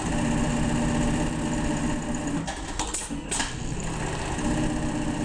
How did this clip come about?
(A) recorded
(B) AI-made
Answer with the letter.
A